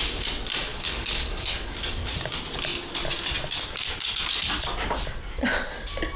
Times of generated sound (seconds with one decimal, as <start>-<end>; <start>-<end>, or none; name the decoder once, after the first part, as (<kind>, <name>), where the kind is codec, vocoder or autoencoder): 0.7-2.1 (codec, DAC)

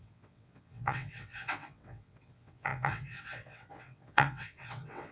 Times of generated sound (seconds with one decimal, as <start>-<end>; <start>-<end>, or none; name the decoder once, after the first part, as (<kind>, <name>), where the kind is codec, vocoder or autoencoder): 0.0-5.1 (vocoder, WaveNeXt)

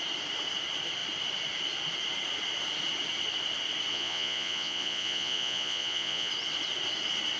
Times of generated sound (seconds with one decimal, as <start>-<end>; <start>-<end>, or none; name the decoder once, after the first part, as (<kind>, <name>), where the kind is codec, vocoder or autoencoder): 3.9-6.3 (vocoder, Vocos)

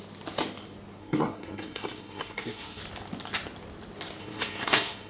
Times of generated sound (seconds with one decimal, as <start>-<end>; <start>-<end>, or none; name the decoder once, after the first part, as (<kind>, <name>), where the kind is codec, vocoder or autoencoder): 1.0-2.8 (codec, SNAC); 4.2-5.1

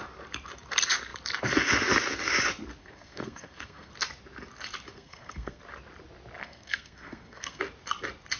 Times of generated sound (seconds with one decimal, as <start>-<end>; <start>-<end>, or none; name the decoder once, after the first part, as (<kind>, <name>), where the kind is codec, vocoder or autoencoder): 2.8-3.9 (codec, SNAC); 4.9-5.6; 6.4-7.6

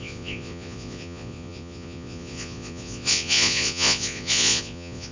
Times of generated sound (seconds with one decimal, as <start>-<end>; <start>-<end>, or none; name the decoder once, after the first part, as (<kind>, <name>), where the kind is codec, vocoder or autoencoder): 0.0-5.1 (vocoder, Vocos)